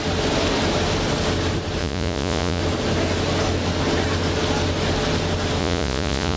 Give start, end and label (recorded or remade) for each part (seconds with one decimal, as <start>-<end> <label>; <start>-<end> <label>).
0.0-1.8 recorded; 1.8-2.6 remade; 2.6-5.6 recorded; 5.6-6.4 remade